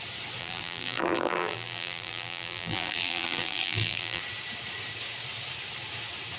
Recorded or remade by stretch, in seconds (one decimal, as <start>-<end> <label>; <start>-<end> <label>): 0.0-0.4 recorded; 0.4-4.2 remade; 4.2-6.4 recorded